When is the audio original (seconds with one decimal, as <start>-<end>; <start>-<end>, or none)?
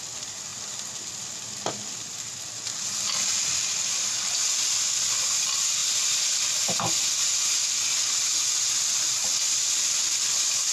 0.0-5.8; 6.4-10.7